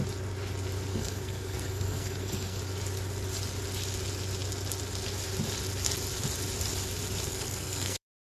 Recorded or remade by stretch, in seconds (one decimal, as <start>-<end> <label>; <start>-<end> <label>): 0.0-0.9 recorded; 0.9-2.6 remade; 2.6-7.3 recorded; 7.3-8.3 remade